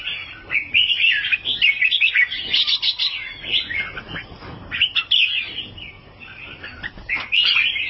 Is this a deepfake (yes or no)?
no